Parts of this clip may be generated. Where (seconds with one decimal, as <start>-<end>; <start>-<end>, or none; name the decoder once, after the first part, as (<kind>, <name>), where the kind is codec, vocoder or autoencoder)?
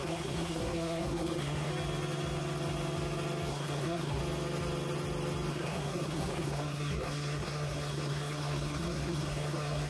0.0-1.7 (codec, SNAC); 3.5-4.2; 5.5-9.9